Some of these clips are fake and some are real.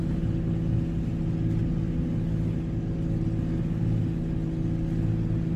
real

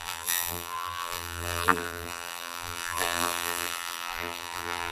fake